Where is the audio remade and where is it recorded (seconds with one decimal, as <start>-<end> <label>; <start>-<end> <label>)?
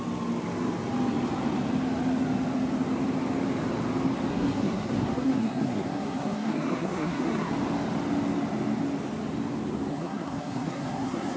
0.0-4.3 recorded; 4.3-7.5 remade; 7.5-9.9 recorded; 9.9-11.4 remade